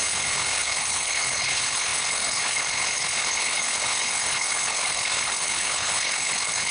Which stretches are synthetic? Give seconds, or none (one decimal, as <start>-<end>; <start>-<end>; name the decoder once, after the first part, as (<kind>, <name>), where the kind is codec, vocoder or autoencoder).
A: 0.0-6.7 (codec, HILCodec)